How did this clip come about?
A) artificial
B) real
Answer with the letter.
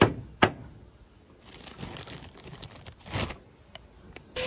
B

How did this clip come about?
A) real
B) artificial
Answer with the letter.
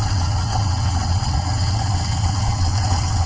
B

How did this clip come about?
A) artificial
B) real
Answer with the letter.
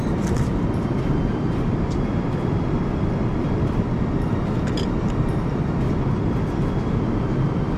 A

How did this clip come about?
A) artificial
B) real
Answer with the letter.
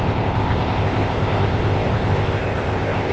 A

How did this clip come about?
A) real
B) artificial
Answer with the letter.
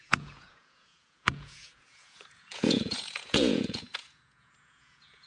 B